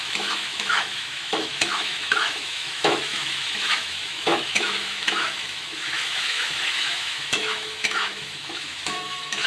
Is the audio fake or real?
fake